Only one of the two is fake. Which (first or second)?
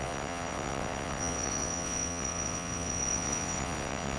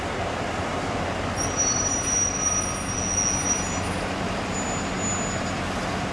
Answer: first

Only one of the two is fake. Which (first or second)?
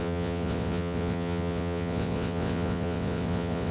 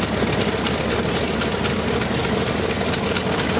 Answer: first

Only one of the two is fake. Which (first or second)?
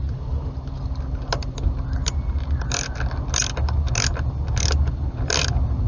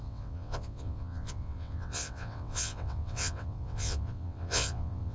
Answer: second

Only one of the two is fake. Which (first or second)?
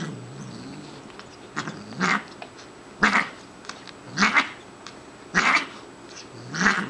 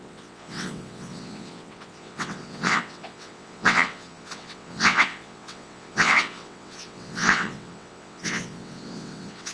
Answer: second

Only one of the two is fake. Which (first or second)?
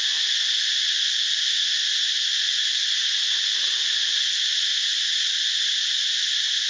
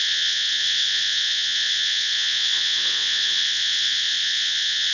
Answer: second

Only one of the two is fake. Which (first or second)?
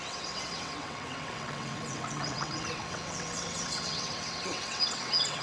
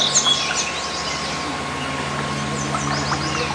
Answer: first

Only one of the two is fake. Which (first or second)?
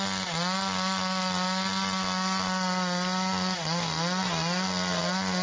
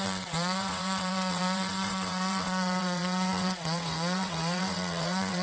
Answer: second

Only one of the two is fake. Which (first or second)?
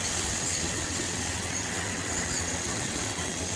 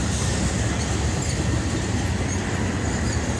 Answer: first